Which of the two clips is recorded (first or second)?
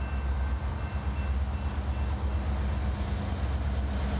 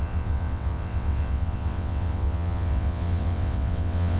first